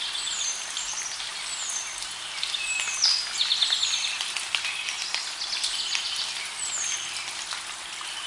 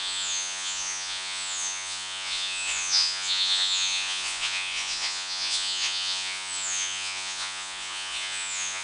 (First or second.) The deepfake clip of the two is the second